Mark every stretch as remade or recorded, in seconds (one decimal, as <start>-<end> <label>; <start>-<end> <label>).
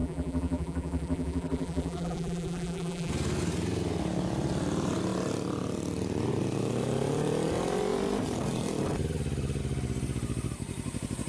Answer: 0.0-3.1 remade; 3.1-11.3 recorded